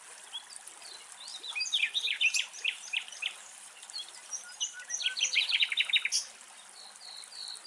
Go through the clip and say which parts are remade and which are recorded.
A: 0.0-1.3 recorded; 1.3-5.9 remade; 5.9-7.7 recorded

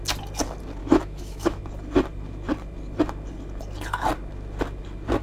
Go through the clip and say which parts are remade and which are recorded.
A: 0.0-0.8 recorded; 0.8-1.6 remade; 1.6-5.2 recorded

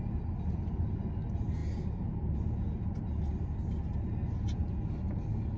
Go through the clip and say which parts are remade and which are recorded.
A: 0.0-5.6 recorded